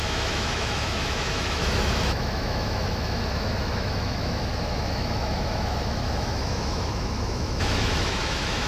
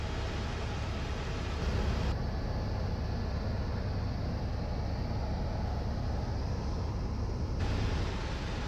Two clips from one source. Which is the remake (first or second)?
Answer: first